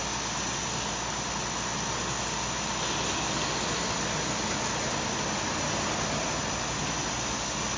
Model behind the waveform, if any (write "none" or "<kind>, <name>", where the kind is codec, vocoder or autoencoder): none